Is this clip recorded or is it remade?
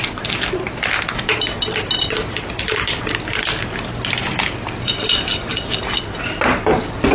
recorded